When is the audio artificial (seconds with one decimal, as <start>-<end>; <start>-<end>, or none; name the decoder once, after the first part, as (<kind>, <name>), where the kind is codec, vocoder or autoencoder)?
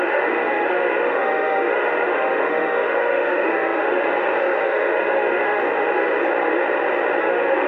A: 0.0-6.2 (autoencoder, DAC-VAE); 7.2-7.7